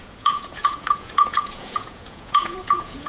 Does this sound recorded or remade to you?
remade